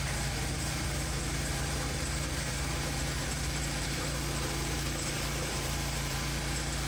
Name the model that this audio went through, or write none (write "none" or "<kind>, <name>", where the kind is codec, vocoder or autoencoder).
vocoder, BigVGAN v2